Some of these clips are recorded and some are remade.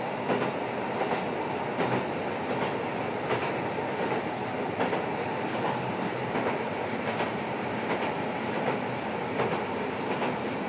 recorded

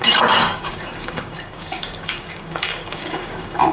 remade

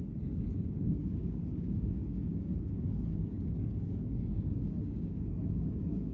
remade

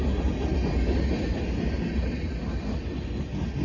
recorded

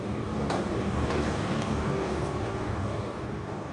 remade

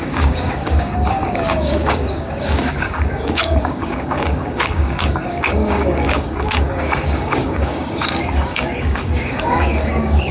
remade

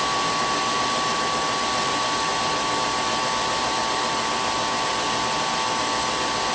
recorded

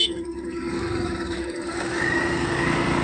remade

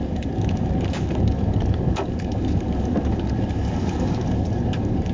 remade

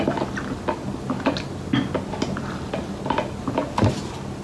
recorded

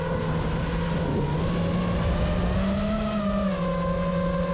recorded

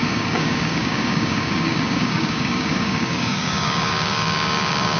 remade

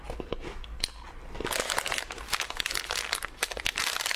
recorded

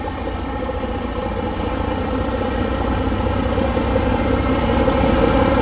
recorded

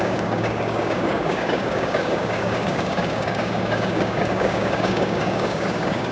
remade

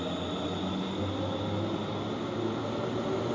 recorded